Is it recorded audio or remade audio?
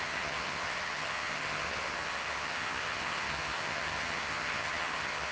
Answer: remade